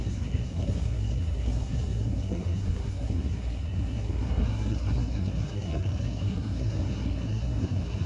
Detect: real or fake fake